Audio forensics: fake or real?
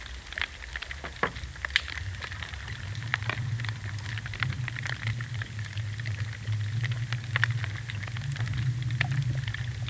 real